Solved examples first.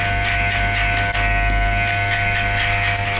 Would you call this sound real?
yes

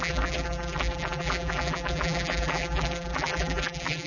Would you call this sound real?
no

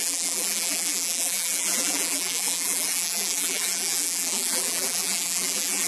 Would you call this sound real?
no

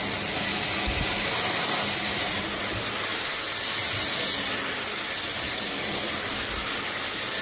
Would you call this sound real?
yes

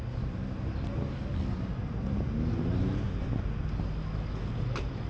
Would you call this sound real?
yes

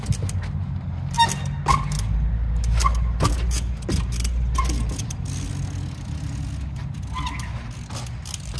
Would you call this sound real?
yes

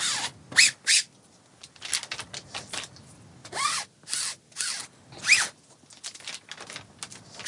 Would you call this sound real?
yes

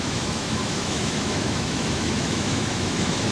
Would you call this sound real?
no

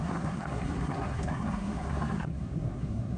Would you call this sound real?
no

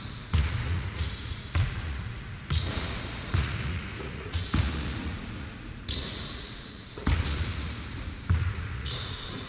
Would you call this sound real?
no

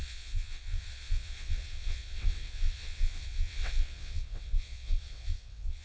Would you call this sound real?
no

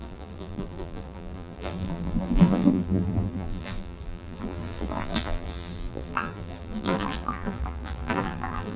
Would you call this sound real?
no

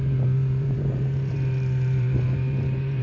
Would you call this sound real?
no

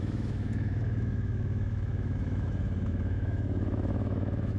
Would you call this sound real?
no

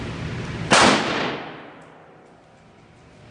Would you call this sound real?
yes